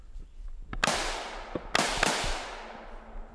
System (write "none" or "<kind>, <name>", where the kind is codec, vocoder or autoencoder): none